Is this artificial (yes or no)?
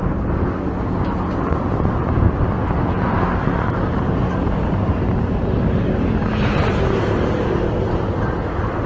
no